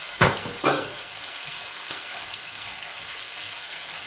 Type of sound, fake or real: fake